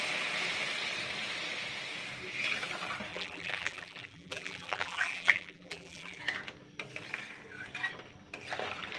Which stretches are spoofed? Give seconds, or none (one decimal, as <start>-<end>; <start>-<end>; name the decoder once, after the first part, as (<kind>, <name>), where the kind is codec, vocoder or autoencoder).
3.1-6.2 (vocoder, BigVGAN v2)